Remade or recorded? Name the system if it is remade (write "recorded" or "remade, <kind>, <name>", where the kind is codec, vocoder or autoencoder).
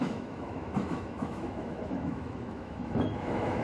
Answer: remade, autoencoder, DAC-VAE